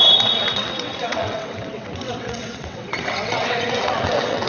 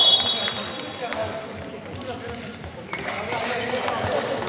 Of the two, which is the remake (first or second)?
first